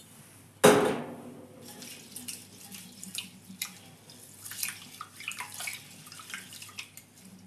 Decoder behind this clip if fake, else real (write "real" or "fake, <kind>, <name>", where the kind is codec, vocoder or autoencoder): real